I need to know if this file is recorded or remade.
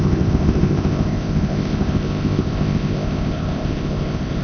remade